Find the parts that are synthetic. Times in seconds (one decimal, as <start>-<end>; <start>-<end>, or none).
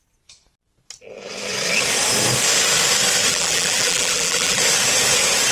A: 3.3-4.6